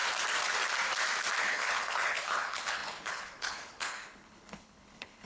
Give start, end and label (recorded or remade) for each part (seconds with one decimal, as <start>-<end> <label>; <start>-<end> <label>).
0.0-1.4 recorded; 1.4-5.3 remade

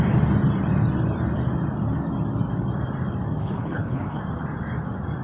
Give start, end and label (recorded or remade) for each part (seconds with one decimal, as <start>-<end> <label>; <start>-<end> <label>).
0.0-3.4 recorded; 3.4-4.2 remade; 4.2-5.2 recorded

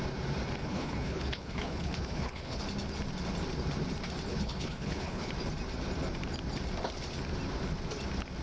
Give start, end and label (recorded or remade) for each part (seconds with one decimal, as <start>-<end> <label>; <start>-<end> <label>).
0.0-0.6 recorded; 0.6-2.6 remade; 2.6-4.3 recorded; 4.3-5.3 remade; 5.3-8.4 recorded

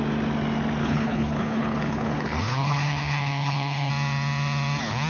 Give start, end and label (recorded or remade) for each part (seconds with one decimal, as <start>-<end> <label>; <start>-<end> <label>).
0.0-0.8 recorded; 0.8-3.9 remade; 3.9-5.1 recorded

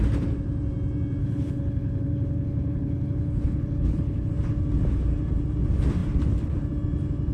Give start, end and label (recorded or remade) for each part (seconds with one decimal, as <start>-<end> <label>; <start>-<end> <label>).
0.0-1.2 recorded; 1.2-4.3 remade; 4.3-7.3 recorded

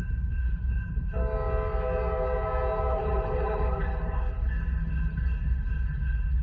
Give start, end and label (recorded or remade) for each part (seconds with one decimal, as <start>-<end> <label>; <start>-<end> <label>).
0.0-1.2 remade; 1.2-2.9 recorded; 2.9-6.4 remade